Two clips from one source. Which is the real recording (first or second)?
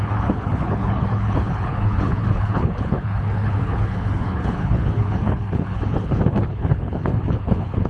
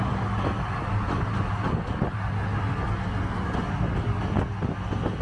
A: second